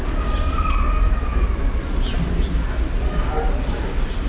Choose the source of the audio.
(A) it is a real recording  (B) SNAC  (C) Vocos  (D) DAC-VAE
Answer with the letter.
A